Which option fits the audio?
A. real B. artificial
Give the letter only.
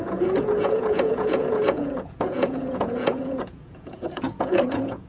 B